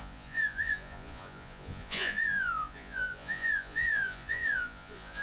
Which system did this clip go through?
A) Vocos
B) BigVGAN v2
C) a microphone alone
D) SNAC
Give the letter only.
A